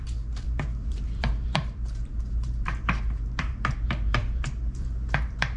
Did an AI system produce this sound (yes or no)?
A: yes